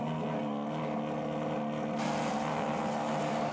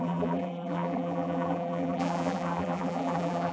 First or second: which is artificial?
second